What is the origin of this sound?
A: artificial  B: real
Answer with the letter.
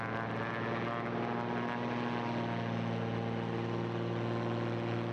B